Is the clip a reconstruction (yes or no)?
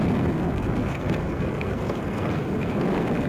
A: yes